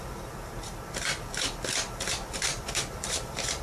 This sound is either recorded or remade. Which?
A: remade